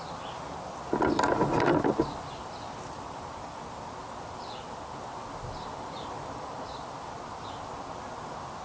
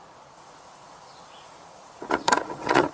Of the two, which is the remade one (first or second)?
second